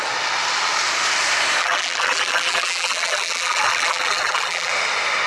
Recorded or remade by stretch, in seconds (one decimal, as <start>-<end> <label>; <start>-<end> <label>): 0.0-1.6 recorded; 1.6-4.7 remade; 4.7-5.3 recorded